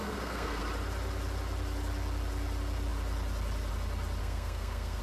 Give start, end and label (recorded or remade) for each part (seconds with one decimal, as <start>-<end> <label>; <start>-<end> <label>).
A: 0.0-0.6 remade; 0.6-4.2 recorded; 4.2-5.0 remade